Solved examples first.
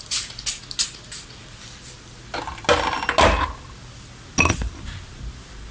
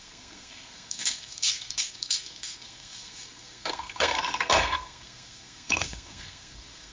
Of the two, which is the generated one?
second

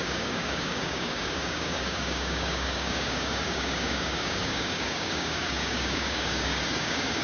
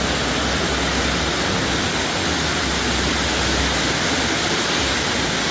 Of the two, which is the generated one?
first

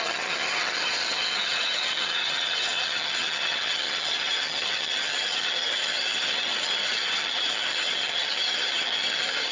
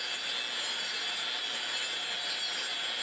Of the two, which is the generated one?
first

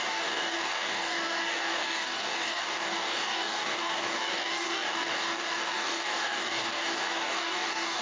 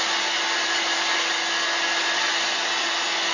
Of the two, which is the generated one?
first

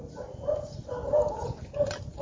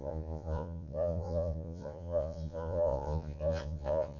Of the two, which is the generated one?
second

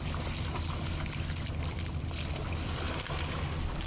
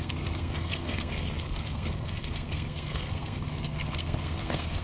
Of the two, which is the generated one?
second